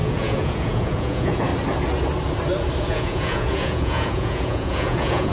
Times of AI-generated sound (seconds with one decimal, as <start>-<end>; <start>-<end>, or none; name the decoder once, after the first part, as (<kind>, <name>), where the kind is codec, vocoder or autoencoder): 0.0-1.5 (vocoder, Vocos); 2.8-5.3